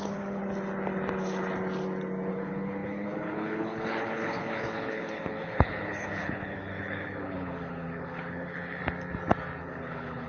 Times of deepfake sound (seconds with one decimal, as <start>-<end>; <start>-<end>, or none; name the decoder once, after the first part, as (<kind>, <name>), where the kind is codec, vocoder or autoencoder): 0.0-0.4 (codec, HILCodec); 2.3-8.8; 9.6-10.3